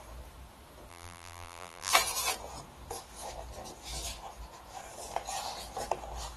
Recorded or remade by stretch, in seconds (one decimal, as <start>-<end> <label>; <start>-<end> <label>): 0.0-0.9 recorded; 0.9-1.9 remade; 1.9-6.4 recorded